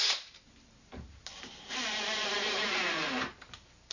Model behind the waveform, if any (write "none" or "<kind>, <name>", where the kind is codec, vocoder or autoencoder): vocoder, BigVGAN v2